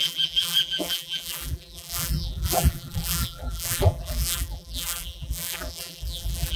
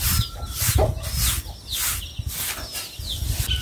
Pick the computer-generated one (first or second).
first